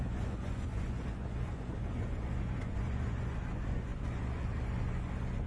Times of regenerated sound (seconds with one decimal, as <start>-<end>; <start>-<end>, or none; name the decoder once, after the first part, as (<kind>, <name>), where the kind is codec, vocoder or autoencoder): 0.0-5.5 (vocoder, Vocos)

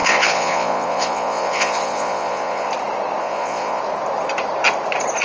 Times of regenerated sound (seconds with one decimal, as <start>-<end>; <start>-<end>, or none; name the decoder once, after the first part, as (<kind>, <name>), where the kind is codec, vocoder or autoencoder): 0.0-2.7 (vocoder, Vocos); 3.2-3.8

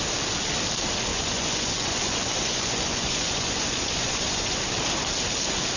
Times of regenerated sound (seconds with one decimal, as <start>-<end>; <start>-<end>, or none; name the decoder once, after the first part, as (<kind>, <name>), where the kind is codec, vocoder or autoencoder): 1.1-4.6 (vocoder, Vocos)